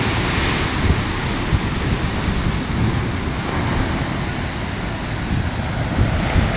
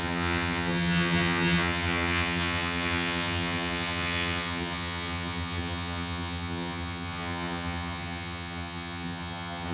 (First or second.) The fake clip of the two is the second